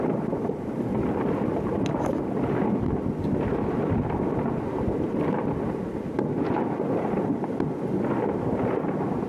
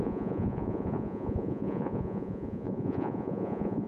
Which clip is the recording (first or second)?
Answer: first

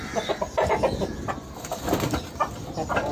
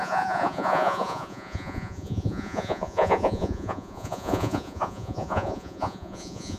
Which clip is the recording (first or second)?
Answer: first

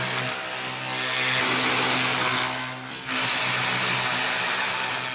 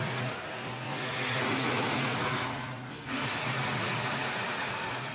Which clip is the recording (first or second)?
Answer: first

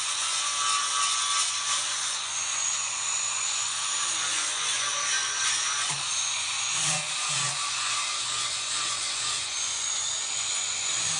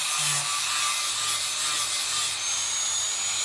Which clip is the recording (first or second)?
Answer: second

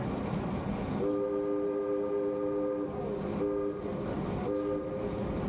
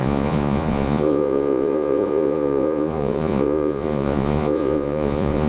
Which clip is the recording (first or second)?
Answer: first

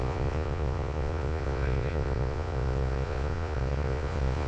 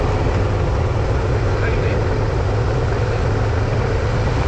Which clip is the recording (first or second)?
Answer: second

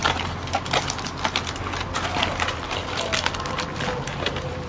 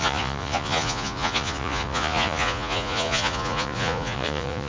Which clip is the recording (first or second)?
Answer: first